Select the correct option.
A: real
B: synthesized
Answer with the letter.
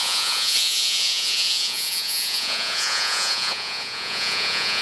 B